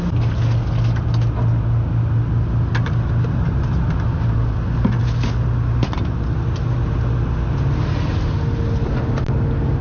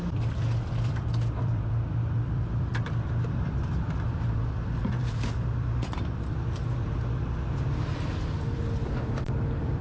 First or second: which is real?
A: first